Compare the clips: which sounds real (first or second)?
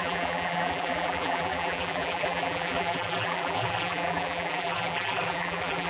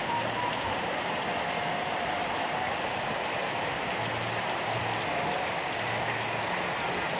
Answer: second